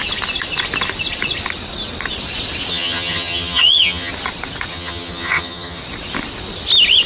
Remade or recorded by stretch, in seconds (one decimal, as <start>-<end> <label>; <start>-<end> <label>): 0.0-2.7 recorded; 2.7-4.1 remade; 4.1-4.7 recorded; 4.7-5.8 remade; 5.8-7.1 recorded